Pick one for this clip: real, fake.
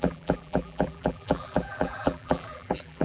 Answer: fake